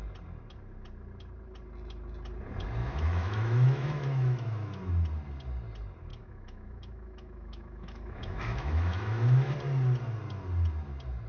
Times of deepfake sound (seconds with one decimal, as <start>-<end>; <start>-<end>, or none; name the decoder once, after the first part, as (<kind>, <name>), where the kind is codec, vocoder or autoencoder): 2.8-4.9 (autoencoder, DAC-VAE); 6.1-9.5